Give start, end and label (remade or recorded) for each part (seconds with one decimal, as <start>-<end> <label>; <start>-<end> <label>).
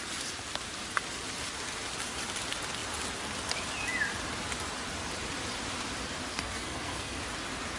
0.0-6.3 recorded; 6.3-7.2 remade; 7.2-7.8 recorded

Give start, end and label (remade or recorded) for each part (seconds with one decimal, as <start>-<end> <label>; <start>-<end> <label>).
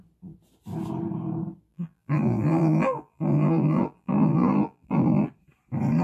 0.0-1.7 recorded; 1.7-5.3 remade; 5.3-6.0 recorded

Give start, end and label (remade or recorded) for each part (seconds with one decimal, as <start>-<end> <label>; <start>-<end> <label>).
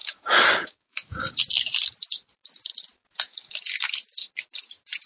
0.0-1.4 remade; 1.4-5.1 recorded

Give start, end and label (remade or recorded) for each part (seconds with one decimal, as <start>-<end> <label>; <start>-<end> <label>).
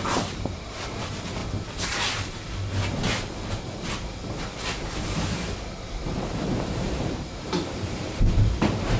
0.0-1.4 remade; 1.4-6.6 recorded; 6.6-9.0 remade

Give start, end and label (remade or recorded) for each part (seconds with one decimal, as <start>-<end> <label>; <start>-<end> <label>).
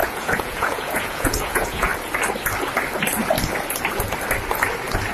0.0-1.9 remade; 1.9-5.1 recorded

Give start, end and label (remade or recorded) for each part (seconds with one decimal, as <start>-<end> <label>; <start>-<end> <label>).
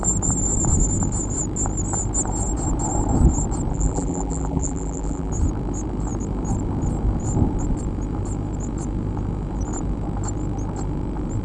0.0-3.7 recorded; 3.7-5.3 remade; 5.3-11.4 recorded